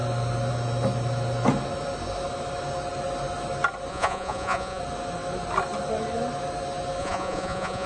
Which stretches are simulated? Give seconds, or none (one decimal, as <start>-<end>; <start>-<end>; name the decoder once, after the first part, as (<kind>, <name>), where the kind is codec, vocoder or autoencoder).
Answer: 3.9-4.8 (vocoder, Vocos); 7.0-7.9

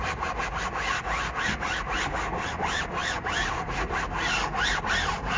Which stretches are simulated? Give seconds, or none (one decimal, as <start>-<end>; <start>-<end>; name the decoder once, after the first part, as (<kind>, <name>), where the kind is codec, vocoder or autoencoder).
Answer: none

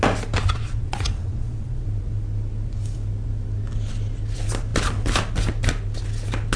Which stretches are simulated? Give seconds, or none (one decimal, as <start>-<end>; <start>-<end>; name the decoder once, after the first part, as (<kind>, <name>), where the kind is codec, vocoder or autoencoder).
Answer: 0.4-1.8 (vocoder, Vocos)

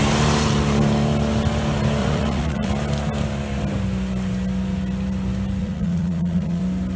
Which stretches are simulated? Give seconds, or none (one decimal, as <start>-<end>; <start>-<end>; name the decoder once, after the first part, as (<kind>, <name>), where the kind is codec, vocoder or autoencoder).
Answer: 2.0-2.7 (vocoder, Vocos); 5.6-6.6